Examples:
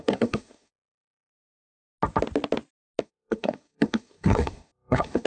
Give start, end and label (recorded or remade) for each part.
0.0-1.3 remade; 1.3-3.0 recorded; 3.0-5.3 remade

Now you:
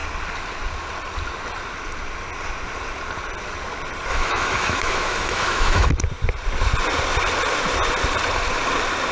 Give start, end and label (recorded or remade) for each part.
0.0-4.1 recorded; 4.1-5.9 remade; 5.9-9.1 recorded

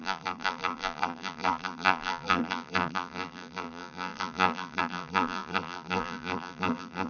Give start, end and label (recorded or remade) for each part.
0.0-7.1 remade

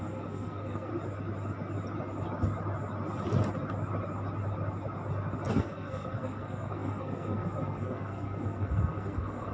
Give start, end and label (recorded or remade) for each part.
0.0-0.9 remade; 0.9-5.5 recorded; 5.5-9.5 remade

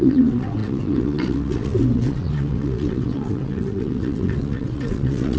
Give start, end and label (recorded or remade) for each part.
0.0-5.4 remade

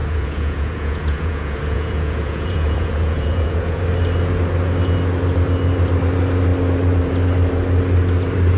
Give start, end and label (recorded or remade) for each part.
0.0-3.8 remade; 3.8-8.6 recorded

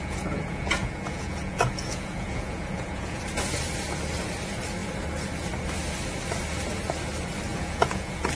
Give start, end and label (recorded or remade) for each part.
0.0-3.2 remade; 3.2-7.5 recorded; 7.5-8.3 remade